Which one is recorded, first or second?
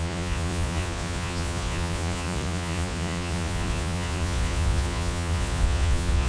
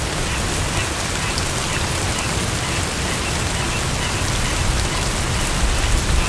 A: second